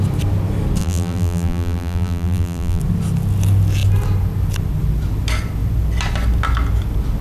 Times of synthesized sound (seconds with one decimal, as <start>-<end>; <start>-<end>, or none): 0.8-2.8